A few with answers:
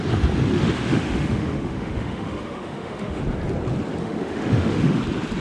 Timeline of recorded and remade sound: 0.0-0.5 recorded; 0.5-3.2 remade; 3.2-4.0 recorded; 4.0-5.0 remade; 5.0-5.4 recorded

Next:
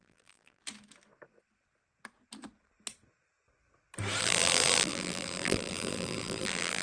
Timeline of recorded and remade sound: 0.0-0.6 remade; 0.6-4.2 recorded; 4.2-6.8 remade

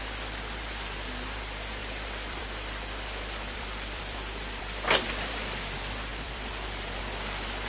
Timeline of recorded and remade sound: 0.0-1.8 recorded; 1.8-4.6 remade; 4.6-6.1 recorded; 6.1-7.0 remade; 7.0-7.7 recorded

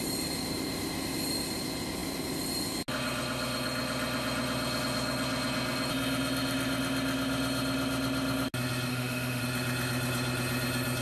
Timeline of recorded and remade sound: 0.0-8.9 recorded; 8.9-9.4 remade; 9.4-11.0 recorded

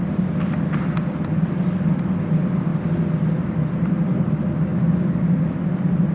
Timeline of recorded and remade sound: 0.0-6.1 recorded

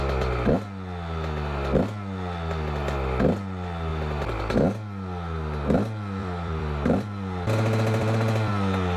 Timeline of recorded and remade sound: 0.0-3.9 recorded; 3.9-4.4 remade; 4.4-6.2 recorded; 6.2-8.5 remade; 8.5-9.0 recorded

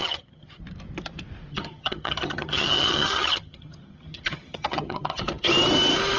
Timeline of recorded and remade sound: 0.0-0.6 remade; 0.6-1.5 recorded; 1.5-5.2 remade; 5.2-6.2 recorded

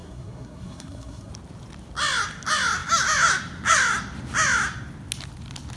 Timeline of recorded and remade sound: 0.0-1.3 remade; 1.3-5.8 recorded